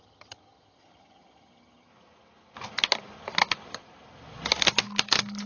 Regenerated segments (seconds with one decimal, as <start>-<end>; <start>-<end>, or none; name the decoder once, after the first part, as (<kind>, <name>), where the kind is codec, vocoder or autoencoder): 0.0-1.9 (vocoder, HiFi-GAN)